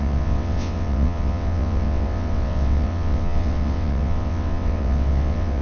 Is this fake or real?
fake